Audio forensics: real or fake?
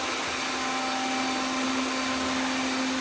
real